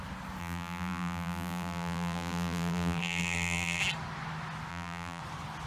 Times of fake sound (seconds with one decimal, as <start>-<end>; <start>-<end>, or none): 0.4-3.8; 4.7-5.2